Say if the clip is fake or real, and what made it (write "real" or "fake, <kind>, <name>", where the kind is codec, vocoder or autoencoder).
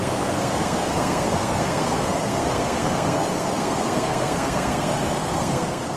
fake, codec, SNAC